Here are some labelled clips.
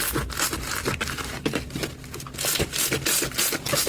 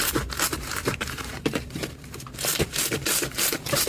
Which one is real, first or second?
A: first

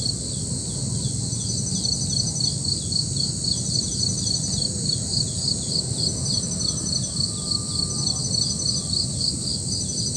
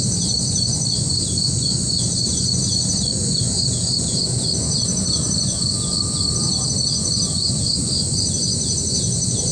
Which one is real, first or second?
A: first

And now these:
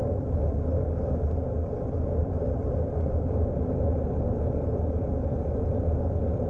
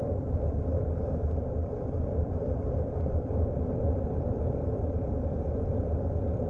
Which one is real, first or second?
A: first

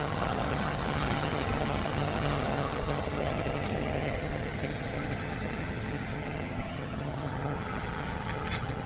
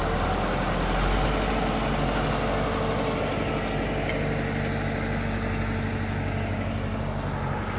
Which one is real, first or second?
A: second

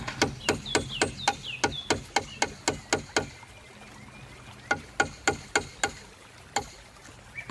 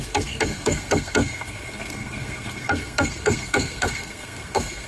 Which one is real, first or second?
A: first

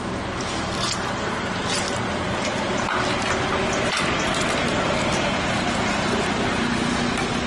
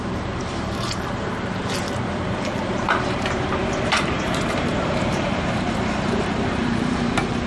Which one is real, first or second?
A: first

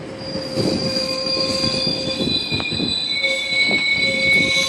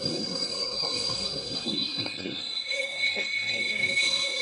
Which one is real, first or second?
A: first